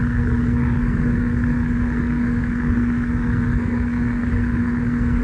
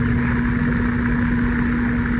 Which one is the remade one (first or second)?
first